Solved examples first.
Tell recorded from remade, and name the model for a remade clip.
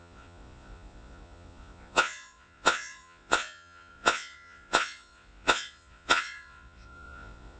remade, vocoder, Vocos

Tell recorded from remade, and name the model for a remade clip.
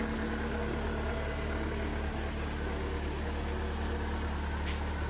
recorded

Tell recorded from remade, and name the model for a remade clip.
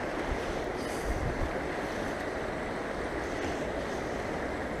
recorded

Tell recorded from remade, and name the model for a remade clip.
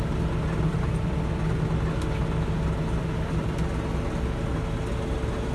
recorded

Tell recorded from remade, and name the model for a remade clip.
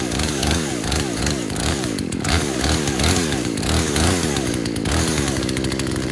remade, codec, DAC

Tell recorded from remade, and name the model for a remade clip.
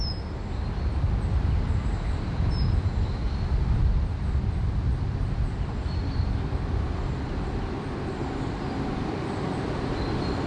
recorded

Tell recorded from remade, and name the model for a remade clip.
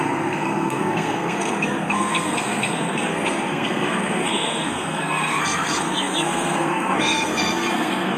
remade, codec, SNAC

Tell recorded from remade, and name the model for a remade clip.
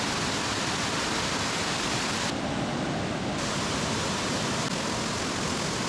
recorded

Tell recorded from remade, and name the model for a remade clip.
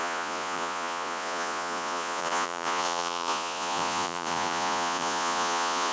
remade, vocoder, Vocos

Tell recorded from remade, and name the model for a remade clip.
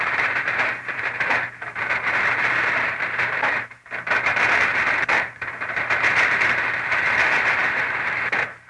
remade, vocoder, BigVGAN v2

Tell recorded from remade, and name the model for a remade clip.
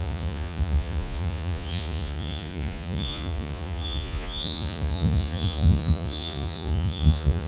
remade, vocoder, Vocos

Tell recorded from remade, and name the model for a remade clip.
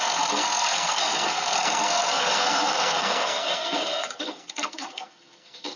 remade, codec, SNAC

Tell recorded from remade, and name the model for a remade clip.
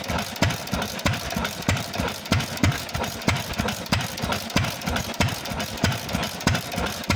recorded